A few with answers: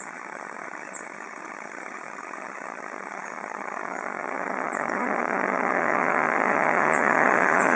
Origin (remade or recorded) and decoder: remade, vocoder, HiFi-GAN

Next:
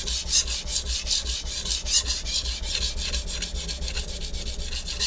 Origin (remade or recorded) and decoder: recorded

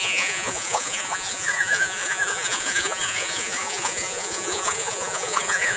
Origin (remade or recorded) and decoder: remade, vocoder, Vocos